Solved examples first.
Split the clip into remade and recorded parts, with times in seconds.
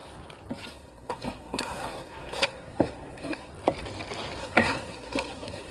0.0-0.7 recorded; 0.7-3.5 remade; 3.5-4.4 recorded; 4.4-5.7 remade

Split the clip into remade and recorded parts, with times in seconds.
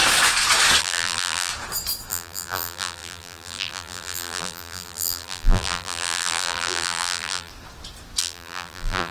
0.0-0.8 recorded; 0.8-1.5 remade; 1.5-2.1 recorded; 2.1-7.5 remade; 7.5-8.2 recorded; 8.2-9.1 remade